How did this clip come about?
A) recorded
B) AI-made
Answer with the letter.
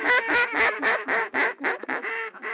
B